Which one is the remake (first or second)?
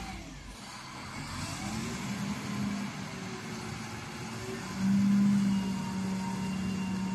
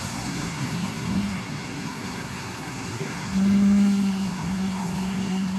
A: second